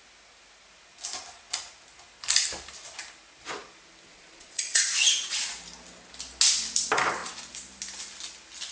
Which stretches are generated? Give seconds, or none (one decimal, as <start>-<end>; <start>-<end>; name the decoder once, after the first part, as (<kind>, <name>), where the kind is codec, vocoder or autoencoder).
4.1-4.8 (vocoder, Vocos)